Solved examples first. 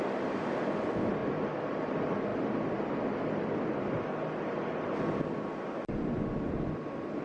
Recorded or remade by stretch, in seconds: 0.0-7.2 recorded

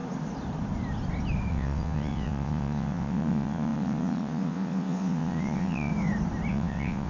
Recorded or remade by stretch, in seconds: 0.0-1.5 recorded; 1.5-5.9 remade; 5.9-6.5 recorded; 6.5-7.1 remade